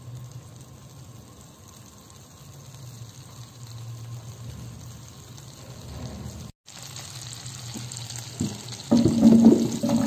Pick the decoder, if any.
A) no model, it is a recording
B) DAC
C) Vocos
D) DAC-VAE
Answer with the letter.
A